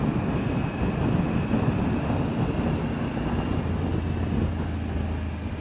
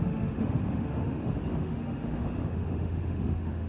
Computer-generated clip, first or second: second